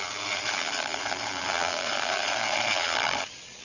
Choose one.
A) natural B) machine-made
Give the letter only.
B